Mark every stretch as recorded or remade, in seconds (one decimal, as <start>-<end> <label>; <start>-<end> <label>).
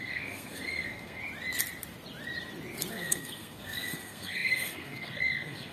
0.0-1.2 remade; 1.2-2.9 recorded; 2.9-5.7 remade